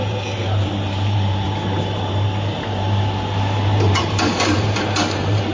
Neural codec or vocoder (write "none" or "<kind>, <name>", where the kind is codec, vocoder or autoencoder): vocoder, BigVGAN v2